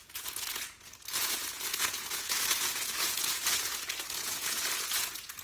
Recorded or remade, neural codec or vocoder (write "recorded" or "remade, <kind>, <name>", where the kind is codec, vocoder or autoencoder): remade, vocoder, Vocos